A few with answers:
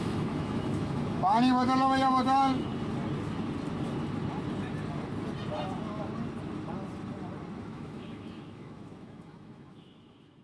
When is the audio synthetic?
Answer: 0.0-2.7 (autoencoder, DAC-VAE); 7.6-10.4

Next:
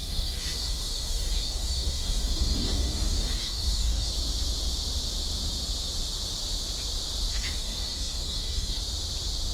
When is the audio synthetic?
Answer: 0.0-4.1 (codec, DAC); 7.3-8.8